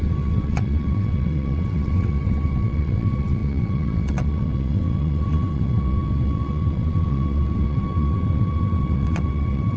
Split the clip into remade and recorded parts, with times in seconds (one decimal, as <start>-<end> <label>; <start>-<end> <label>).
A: 0.0-9.8 remade